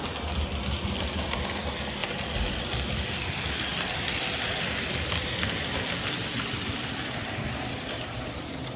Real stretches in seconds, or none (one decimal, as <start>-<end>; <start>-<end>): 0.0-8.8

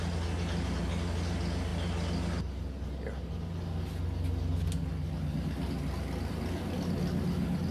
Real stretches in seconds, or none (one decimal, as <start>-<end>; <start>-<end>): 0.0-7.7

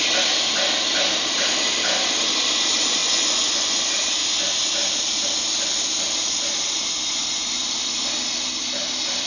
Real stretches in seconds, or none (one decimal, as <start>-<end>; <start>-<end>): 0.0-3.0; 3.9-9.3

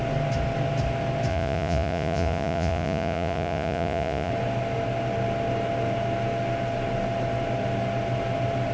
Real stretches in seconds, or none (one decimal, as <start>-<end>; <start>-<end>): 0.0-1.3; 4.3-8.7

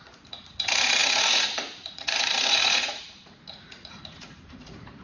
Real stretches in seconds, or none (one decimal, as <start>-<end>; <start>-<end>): none

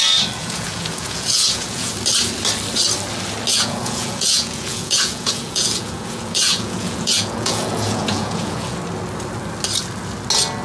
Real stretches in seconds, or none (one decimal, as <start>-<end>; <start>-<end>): 0.0-0.4; 1.9-3.5; 8.8-10.6